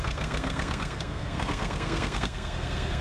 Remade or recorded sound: remade